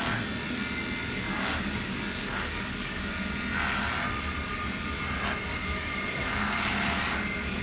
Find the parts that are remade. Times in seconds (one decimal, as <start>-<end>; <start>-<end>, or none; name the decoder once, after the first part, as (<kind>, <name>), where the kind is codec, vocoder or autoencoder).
1.0-3.3 (codec, DAC); 5.5-7.6